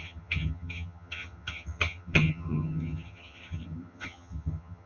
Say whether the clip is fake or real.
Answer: fake